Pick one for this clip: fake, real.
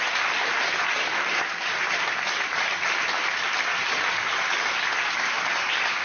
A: real